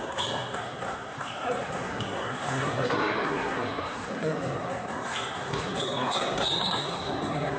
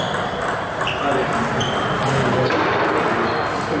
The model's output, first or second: first